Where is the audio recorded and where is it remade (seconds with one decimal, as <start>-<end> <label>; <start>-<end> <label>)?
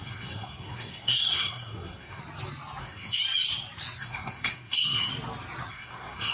0.0-2.2 remade; 2.2-2.8 recorded; 2.8-3.2 remade; 3.2-4.0 recorded; 4.0-5.1 remade; 5.1-5.7 recorded; 5.7-6.3 remade